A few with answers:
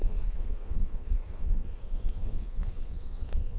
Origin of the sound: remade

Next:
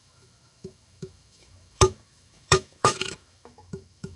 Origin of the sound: remade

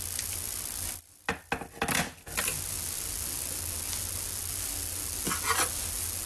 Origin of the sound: recorded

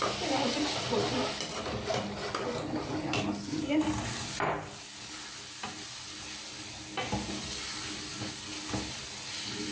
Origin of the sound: recorded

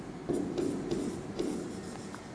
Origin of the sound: recorded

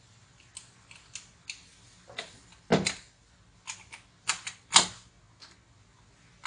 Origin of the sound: recorded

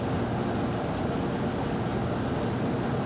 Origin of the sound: recorded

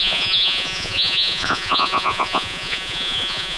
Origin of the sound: remade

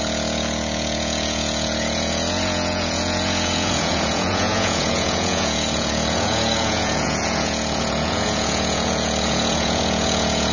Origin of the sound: remade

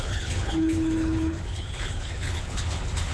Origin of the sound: remade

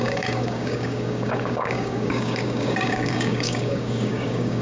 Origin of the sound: remade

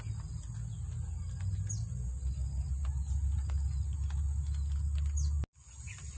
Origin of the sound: recorded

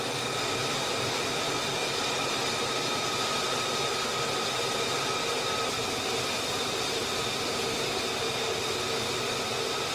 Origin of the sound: recorded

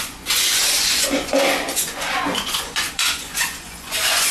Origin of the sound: remade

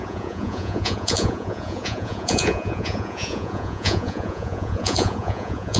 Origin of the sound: remade